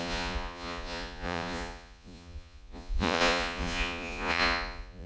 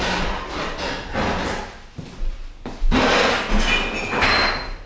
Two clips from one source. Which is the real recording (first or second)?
second